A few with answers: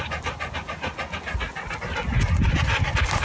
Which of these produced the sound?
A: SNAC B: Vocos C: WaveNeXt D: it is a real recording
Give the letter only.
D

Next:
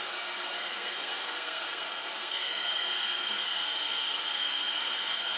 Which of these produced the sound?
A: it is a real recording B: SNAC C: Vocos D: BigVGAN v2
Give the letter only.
B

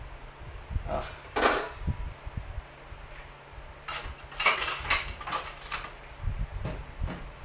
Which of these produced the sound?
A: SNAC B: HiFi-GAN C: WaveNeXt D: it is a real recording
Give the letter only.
D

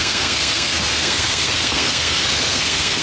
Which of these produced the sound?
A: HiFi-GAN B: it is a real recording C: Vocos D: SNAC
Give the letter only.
D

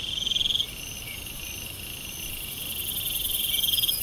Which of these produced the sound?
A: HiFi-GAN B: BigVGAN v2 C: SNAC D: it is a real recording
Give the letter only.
D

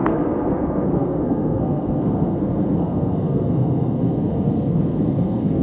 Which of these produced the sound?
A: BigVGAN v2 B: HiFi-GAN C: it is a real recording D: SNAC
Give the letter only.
D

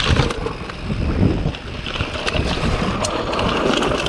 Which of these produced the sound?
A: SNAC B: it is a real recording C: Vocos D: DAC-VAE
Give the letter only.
B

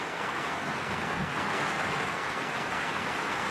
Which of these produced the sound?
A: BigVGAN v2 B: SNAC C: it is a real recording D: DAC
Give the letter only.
B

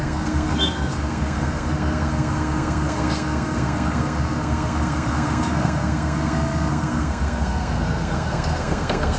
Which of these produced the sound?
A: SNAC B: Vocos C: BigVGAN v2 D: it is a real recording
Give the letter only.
A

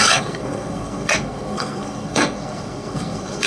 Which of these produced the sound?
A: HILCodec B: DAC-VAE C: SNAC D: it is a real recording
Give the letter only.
C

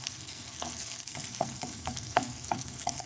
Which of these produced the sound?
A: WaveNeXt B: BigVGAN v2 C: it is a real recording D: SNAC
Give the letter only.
D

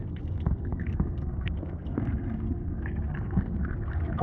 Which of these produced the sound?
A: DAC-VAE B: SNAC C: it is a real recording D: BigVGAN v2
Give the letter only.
B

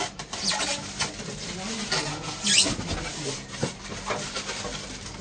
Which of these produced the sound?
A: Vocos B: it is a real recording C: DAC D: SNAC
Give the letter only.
B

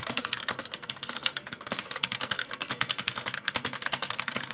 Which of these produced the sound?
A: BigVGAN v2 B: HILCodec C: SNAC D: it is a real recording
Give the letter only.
C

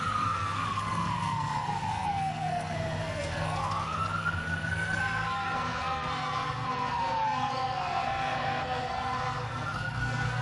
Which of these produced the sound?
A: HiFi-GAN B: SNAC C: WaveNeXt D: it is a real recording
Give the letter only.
B